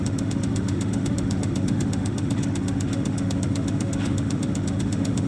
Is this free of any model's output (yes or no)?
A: no